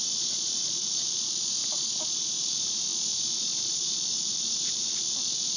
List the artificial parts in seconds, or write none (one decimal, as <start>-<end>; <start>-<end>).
0.0-1.6; 2.5-5.6